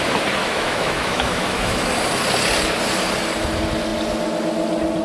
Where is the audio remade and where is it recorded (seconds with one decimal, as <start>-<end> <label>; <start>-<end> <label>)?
0.0-0.4 recorded; 0.4-1.9 remade; 1.9-5.0 recorded